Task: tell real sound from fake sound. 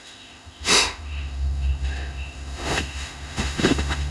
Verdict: fake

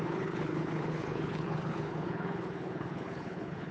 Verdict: fake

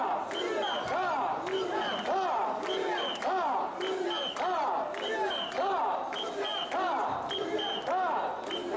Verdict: real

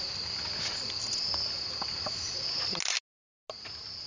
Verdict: real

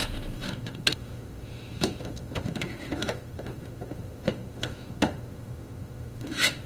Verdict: fake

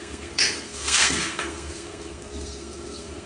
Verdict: fake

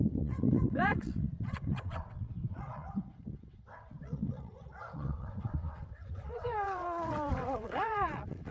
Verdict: fake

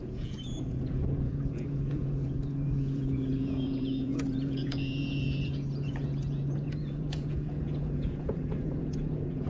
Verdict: fake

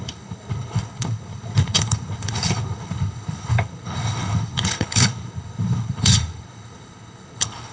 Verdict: fake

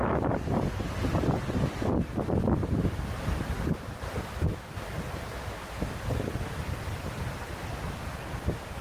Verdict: real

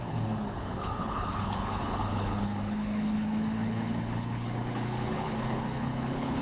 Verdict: fake